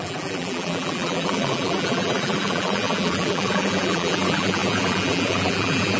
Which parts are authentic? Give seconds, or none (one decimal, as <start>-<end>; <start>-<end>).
none